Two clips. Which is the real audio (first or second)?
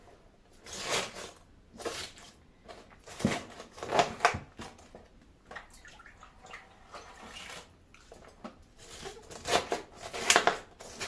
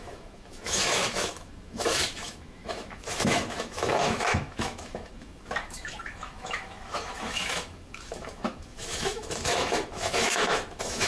first